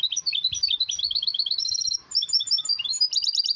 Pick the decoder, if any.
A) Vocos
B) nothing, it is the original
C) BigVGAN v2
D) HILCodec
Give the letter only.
B